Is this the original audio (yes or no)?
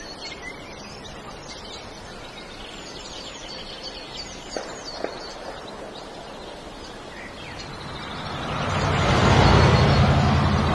yes